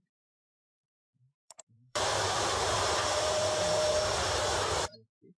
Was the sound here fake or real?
fake